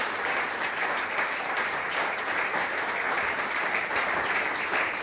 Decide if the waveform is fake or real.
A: fake